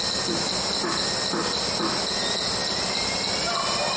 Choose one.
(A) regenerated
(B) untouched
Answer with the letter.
B